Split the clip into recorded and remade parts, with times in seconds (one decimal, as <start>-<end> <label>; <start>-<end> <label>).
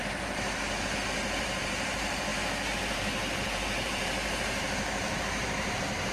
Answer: 0.0-2.3 remade; 2.3-2.8 recorded; 2.8-6.1 remade